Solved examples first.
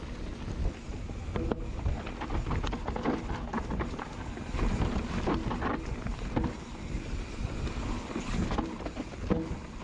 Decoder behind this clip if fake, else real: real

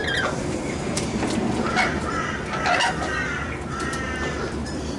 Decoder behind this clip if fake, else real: real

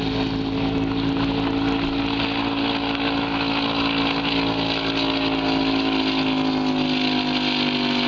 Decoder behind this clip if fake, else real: real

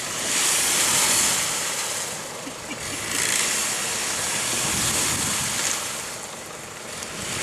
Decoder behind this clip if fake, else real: real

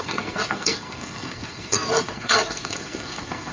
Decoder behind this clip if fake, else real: fake, codec, SNAC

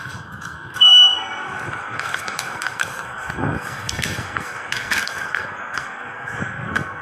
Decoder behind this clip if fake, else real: fake, codec, SNAC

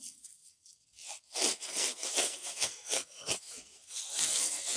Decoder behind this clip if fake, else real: fake, codec, SNAC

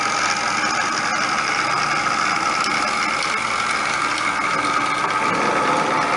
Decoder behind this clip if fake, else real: real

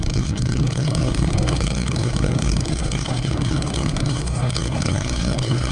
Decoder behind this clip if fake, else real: fake, codec, SNAC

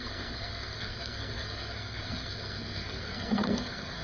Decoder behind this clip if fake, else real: fake, codec, SNAC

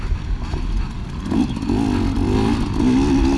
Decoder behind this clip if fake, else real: real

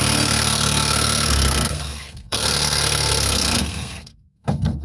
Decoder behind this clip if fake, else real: fake, codec, SNAC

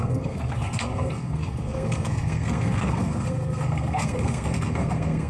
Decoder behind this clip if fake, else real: fake, codec, SNAC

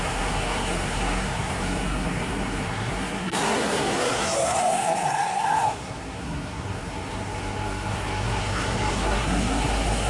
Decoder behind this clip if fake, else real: fake, codec, SNAC